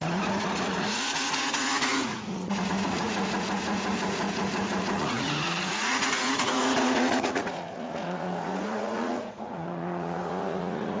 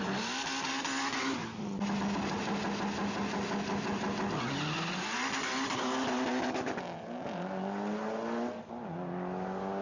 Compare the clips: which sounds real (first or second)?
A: second